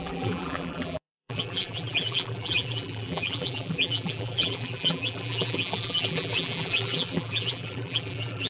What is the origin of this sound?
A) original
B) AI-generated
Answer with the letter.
B